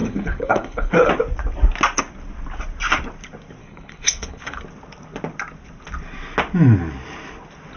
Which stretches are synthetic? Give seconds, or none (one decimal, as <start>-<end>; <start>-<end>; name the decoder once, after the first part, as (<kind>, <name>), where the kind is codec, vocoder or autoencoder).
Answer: 0.0-1.1 (codec, HILCodec); 3.6-4.6